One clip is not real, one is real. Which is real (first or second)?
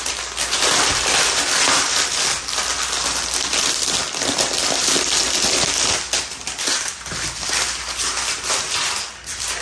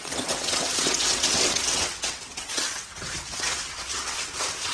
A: first